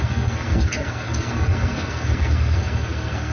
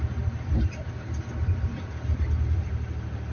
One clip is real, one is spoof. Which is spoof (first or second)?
first